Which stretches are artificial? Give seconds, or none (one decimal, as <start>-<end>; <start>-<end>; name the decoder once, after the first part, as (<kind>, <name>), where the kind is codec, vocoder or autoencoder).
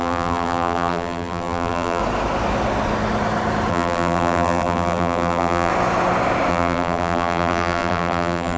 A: 0.0-2.0 (vocoder, BigVGAN v2); 3.7-5.7; 6.5-8.6